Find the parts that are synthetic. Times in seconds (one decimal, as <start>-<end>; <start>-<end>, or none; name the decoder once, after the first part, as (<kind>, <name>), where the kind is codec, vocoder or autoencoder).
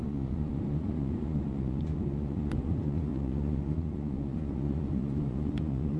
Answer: 0.0-6.0 (vocoder, Vocos)